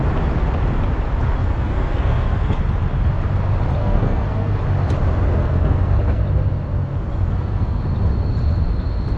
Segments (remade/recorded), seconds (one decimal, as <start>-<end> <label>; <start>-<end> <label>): 0.0-1.4 recorded; 1.4-2.6 remade; 2.6-3.8 recorded; 3.8-4.6 remade; 4.6-5.4 recorded; 5.4-6.2 remade; 6.2-7.1 recorded; 7.1-7.8 remade; 7.8-9.2 recorded